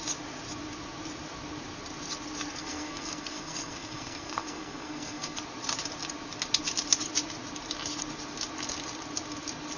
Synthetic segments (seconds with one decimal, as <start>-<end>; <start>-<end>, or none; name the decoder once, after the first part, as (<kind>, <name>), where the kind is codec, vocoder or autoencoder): 2.6-5.4 (codec, SNAC)